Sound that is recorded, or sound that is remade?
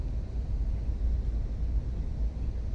recorded